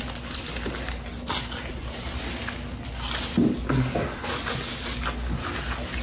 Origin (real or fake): real